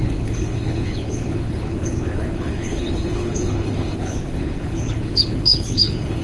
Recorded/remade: remade